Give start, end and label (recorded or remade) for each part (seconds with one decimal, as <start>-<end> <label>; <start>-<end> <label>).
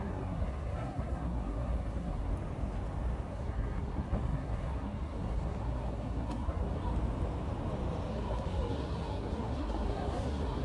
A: 0.0-2.3 remade; 2.3-3.3 recorded; 3.3-6.8 remade; 6.8-8.1 recorded; 8.1-10.6 remade